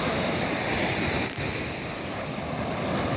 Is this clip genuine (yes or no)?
yes